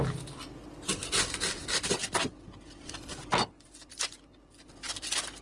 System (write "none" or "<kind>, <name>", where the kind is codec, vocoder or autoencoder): vocoder, BigVGAN v2